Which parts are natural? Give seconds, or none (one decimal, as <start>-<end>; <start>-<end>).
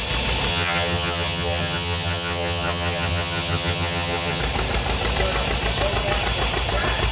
0.0-0.5; 4.4-7.1